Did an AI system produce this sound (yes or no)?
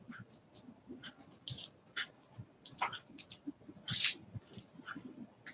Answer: no